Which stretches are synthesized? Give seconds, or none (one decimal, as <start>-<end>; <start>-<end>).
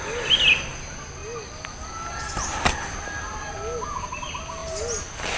none